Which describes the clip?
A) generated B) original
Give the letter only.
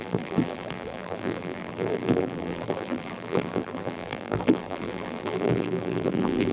A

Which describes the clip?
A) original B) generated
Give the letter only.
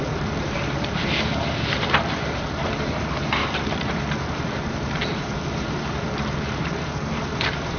B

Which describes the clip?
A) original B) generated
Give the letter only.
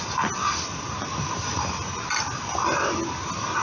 A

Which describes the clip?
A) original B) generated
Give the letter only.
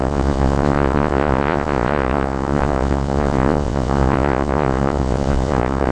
B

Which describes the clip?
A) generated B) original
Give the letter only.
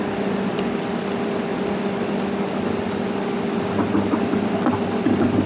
B